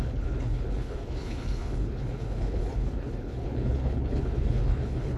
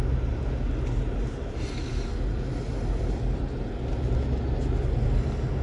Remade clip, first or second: first